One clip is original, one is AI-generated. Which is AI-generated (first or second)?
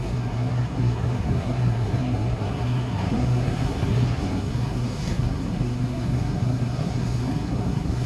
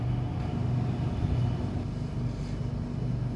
first